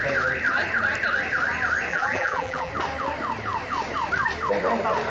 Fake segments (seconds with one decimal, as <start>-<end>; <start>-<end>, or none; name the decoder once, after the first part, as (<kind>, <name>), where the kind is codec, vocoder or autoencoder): 1.9-2.7 (vocoder, BigVGAN v2)